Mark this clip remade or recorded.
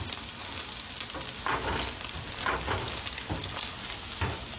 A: recorded